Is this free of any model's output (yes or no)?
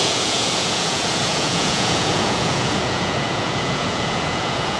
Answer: no